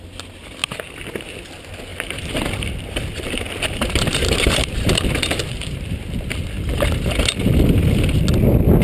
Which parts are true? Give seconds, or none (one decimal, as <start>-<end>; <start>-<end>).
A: 0.0-1.9; 6.0-8.8